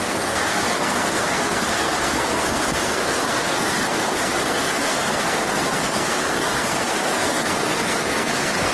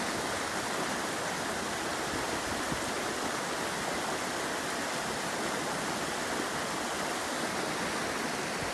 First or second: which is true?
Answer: second